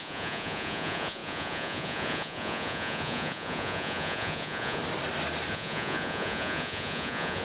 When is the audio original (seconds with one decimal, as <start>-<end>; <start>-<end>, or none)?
4.8-5.5